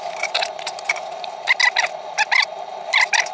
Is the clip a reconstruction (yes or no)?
no